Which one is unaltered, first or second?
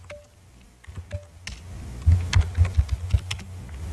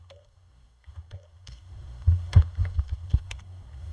first